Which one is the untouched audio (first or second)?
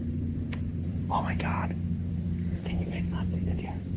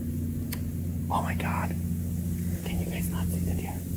second